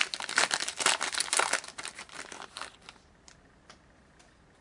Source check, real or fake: real